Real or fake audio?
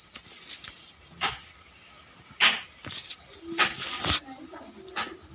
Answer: real